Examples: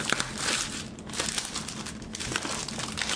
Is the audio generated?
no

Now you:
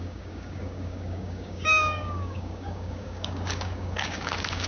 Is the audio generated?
yes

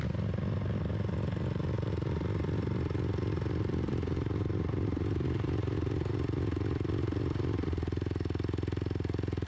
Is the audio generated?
no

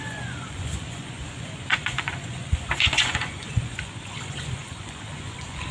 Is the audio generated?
yes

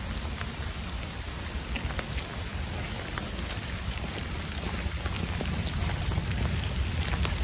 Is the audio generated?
yes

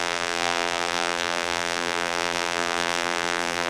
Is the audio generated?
yes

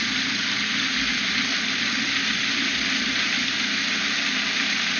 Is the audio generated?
no